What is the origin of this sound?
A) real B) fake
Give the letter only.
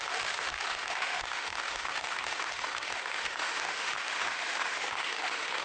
B